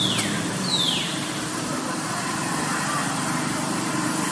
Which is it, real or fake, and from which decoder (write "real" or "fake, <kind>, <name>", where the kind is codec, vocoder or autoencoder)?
fake, vocoder, BigVGAN v2